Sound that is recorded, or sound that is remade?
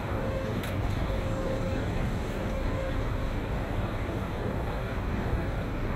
remade